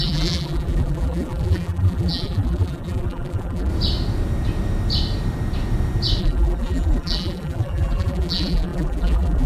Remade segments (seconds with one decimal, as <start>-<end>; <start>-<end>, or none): 0.0-3.7; 6.2-9.5